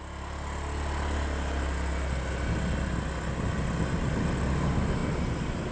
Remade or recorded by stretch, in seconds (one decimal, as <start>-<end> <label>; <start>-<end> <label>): 0.0-5.7 recorded